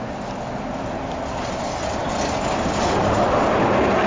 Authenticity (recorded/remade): recorded